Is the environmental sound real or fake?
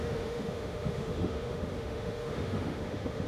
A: fake